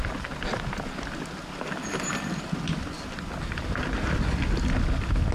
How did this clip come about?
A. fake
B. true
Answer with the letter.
B